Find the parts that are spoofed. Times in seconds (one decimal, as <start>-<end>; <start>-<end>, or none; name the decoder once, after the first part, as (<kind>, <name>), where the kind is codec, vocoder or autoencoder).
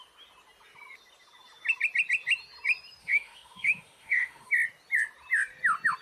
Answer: 3.0-4.5 (autoencoder, DAC-VAE)